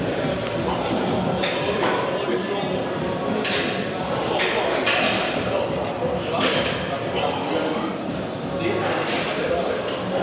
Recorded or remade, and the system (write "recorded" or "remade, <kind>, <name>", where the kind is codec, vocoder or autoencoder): recorded